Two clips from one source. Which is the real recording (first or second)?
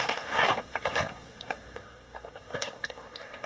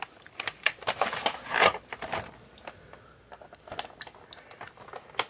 second